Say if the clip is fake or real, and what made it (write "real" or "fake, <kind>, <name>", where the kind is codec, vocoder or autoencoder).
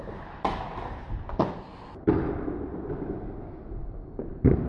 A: real